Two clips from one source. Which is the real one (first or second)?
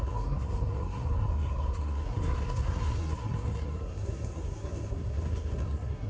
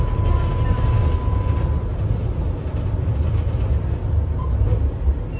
second